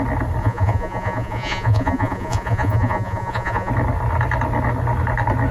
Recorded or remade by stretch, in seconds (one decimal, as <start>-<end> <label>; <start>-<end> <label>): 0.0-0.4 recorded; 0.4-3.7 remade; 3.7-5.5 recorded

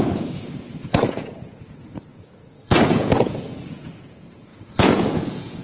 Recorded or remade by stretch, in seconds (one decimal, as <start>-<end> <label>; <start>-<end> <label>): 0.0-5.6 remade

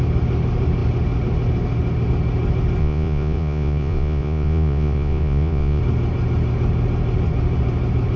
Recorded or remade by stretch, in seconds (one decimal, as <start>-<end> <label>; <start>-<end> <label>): 0.0-2.8 recorded; 2.8-5.8 remade; 5.8-8.2 recorded